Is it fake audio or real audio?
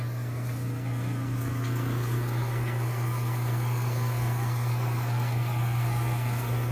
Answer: fake